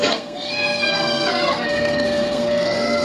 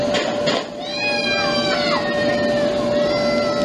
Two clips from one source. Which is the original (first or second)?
second